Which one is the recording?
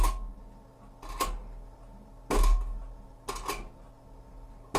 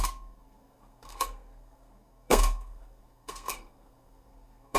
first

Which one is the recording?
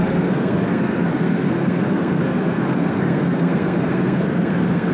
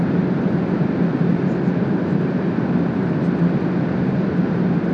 second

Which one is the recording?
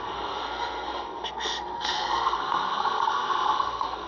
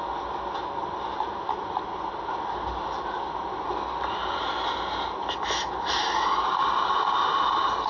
second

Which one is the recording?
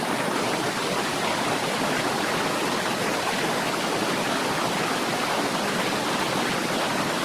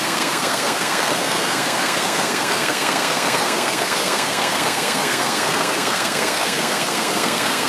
first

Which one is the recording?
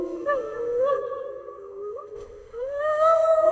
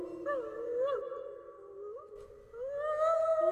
second